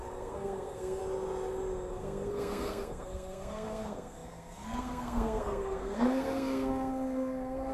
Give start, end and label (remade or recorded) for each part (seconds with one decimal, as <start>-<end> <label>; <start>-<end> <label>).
0.0-1.0 remade; 1.0-1.9 recorded; 1.9-7.7 remade